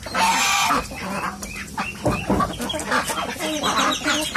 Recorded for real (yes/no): yes